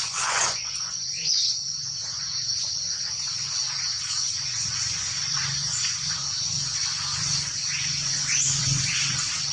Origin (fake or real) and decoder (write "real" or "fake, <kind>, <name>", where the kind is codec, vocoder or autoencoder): fake, vocoder, Vocos